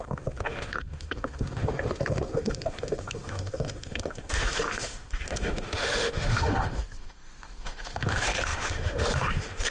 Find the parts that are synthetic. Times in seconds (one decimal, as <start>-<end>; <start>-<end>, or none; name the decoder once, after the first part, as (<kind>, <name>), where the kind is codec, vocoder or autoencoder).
0.0-9.7 (autoencoder, DAC-VAE)